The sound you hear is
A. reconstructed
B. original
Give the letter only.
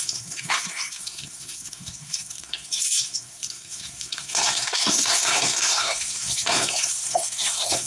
A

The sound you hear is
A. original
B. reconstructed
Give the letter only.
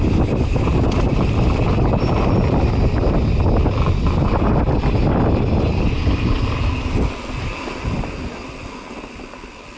A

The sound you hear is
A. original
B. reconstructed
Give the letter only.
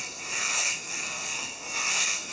B